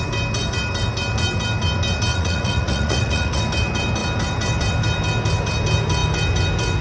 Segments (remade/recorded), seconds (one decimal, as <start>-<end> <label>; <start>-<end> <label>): 0.0-2.1 recorded; 2.1-3.4 remade; 3.4-6.8 recorded